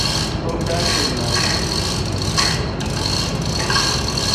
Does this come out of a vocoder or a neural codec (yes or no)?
no